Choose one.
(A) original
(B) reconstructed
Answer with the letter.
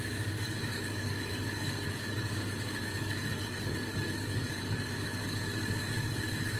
B